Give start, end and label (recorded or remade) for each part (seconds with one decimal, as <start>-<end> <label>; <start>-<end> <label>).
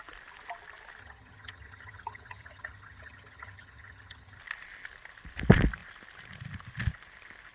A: 0.0-1.0 recorded; 1.0-4.4 remade; 4.4-7.5 recorded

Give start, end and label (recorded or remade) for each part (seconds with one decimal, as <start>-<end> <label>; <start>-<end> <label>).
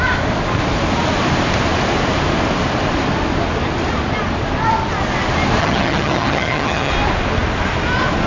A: 0.0-5.6 recorded; 5.6-6.9 remade; 6.9-8.3 recorded